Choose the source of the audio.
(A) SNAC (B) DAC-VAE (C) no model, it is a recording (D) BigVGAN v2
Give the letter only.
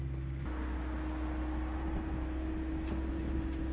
C